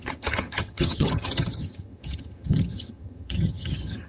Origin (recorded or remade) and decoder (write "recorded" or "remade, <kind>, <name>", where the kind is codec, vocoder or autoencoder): remade, vocoder, HiFi-GAN